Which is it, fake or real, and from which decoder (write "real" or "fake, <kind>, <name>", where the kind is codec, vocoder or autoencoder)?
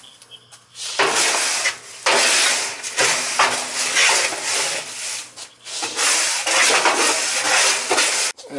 real